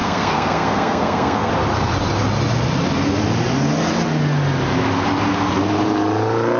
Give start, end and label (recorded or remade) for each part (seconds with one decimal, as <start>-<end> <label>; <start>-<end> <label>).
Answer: 0.0-1.5 remade; 1.5-6.6 recorded